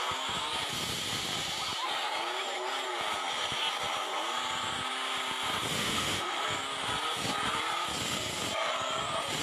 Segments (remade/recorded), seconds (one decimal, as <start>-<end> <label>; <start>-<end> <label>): 0.0-5.8 recorded; 5.8-6.4 remade; 6.4-9.4 recorded